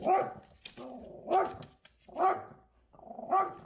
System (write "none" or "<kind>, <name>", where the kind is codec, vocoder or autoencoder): none